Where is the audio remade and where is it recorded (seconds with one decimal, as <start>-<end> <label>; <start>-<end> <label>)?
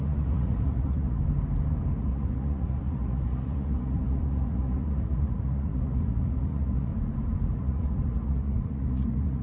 0.0-1.2 remade; 1.2-2.0 recorded; 2.0-6.9 remade; 6.9-7.6 recorded; 7.6-9.4 remade